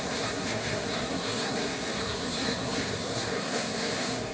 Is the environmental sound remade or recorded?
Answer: remade